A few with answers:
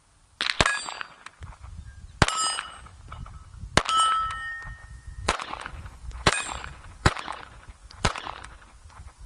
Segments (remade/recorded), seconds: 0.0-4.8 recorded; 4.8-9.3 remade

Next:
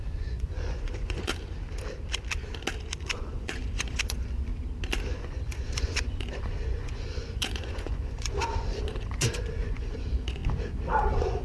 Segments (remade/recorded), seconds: 0.0-1.3 remade; 1.3-3.0 recorded; 3.0-4.5 remade; 4.5-5.2 recorded; 5.2-10.4 remade; 10.4-11.0 recorded; 11.0-11.4 remade

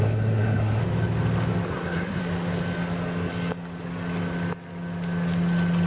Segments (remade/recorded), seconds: 0.0-0.8 remade; 0.8-1.7 recorded; 1.7-2.2 remade; 2.2-5.9 recorded

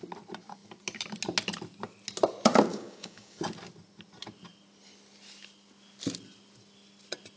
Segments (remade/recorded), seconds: 0.0-2.7 recorded; 2.7-3.4 remade; 3.4-7.4 recorded

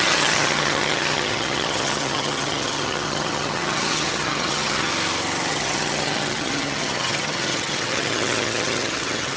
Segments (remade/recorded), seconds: 0.0-4.9 remade; 4.9-5.5 recorded; 5.5-9.4 remade

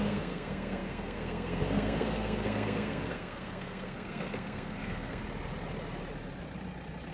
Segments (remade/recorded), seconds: 0.0-5.2 remade; 5.2-7.1 recorded

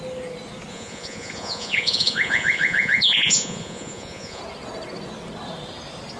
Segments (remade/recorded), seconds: 0.0-0.7 recorded; 0.7-4.4 remade; 4.4-6.2 recorded

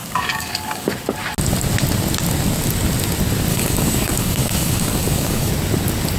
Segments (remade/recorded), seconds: 0.0-0.9 remade; 0.9-3.5 recorded; 3.5-5.5 remade; 5.5-6.2 recorded